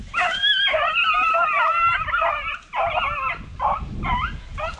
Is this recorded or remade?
recorded